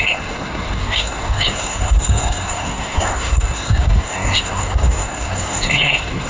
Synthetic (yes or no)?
yes